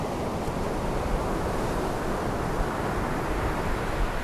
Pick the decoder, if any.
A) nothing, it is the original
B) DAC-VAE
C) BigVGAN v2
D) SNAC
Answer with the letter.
A